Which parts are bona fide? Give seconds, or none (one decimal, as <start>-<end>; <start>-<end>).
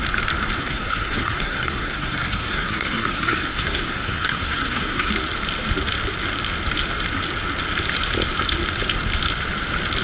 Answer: 0.0-0.6; 5.1-10.0